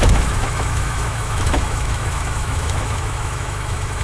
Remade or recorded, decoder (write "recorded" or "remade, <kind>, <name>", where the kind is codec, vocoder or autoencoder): remade, autoencoder, DAC-VAE